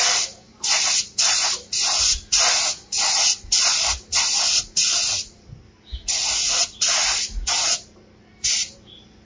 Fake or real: real